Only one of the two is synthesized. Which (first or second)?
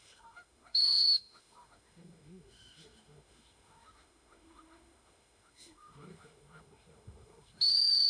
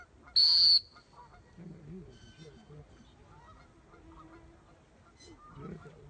first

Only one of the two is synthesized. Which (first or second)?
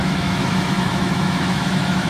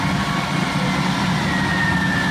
first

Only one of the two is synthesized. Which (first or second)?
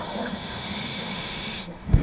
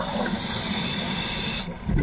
first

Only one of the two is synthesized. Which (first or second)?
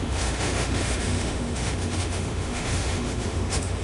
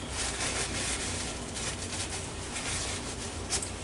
first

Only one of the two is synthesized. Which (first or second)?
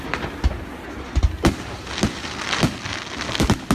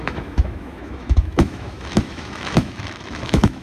second